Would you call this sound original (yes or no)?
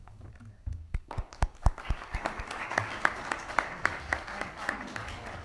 no